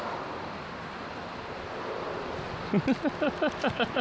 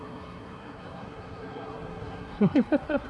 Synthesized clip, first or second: second